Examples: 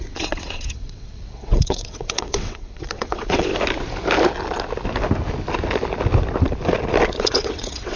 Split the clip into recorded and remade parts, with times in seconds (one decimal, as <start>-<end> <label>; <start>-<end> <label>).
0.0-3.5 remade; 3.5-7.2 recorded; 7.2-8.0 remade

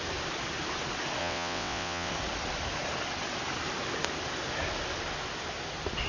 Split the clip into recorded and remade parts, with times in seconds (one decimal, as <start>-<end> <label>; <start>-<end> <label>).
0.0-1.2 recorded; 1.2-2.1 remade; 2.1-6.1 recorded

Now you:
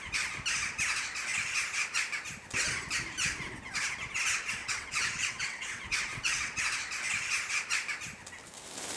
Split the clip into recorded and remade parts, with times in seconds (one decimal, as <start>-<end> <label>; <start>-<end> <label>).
0.0-4.6 recorded; 4.6-6.6 remade; 6.6-9.0 recorded

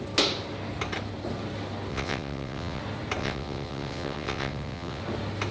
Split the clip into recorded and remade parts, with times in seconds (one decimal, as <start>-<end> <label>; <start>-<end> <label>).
0.0-1.9 recorded; 1.9-2.8 remade; 2.8-3.2 recorded; 3.2-5.0 remade; 5.0-5.5 recorded